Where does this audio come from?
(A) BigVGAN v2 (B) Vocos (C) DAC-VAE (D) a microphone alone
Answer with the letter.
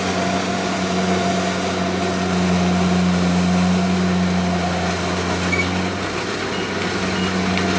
D